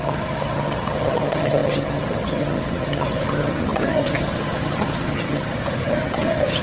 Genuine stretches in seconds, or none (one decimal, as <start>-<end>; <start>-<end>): none